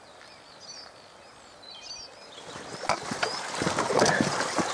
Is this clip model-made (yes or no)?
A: no